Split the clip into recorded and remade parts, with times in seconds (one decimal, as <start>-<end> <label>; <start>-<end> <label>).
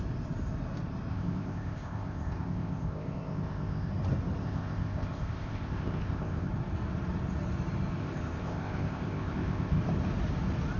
0.0-1.1 recorded; 1.1-3.9 remade; 3.9-4.4 recorded; 4.4-6.5 remade; 6.5-8.0 recorded; 8.0-9.8 remade; 9.8-10.8 recorded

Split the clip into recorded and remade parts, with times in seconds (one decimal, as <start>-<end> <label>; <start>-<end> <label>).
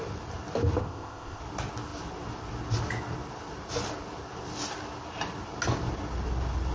0.0-0.8 recorded; 0.8-1.4 remade; 1.4-6.7 recorded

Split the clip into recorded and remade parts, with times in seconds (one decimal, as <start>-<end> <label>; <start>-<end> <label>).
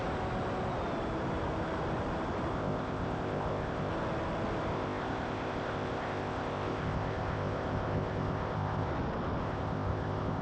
0.0-2.5 recorded; 2.5-3.9 remade; 3.9-4.7 recorded; 4.7-8.9 remade; 8.9-9.4 recorded; 9.4-10.4 remade